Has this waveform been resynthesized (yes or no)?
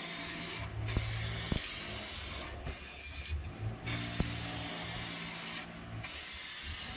no